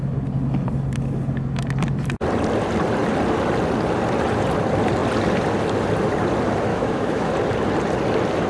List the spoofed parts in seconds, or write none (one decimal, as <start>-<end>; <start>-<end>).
6.7-7.3